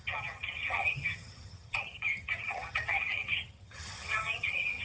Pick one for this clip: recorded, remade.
remade